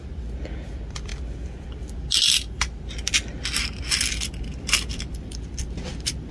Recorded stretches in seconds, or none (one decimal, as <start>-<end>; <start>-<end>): 1.1-4.9

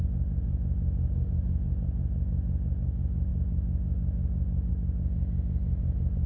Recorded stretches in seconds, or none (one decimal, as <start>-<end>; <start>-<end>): 0.0-6.3

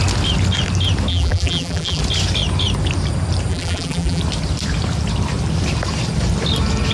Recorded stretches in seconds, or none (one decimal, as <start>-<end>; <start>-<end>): 0.0-1.1; 2.0-3.5; 4.2-6.9

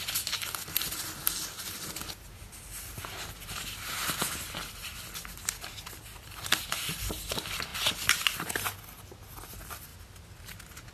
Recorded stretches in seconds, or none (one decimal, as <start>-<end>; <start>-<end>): 0.0-10.9

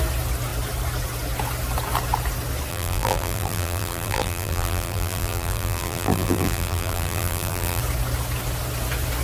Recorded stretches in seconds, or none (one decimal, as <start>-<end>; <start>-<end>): 0.0-2.7; 7.8-9.2

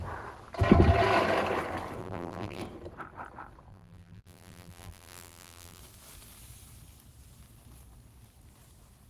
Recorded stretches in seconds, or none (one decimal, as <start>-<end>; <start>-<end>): 0.0-2.0; 2.6-3.7; 5.8-9.1